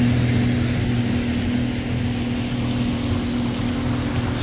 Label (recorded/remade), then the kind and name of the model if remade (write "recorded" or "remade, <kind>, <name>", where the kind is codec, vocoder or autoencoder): recorded